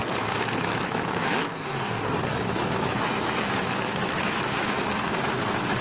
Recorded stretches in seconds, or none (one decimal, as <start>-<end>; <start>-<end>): 0.0-0.6; 1.5-2.3